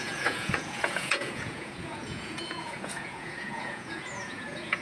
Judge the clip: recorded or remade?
remade